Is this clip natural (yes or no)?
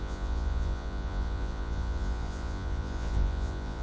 no